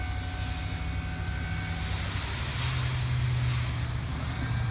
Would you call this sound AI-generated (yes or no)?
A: no